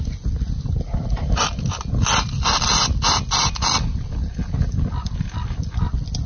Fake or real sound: real